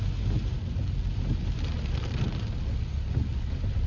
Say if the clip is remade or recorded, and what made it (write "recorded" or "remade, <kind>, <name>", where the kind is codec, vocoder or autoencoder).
recorded